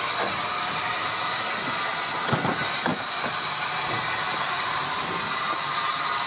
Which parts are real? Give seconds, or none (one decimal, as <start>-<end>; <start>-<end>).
0.0-2.9; 5.2-6.3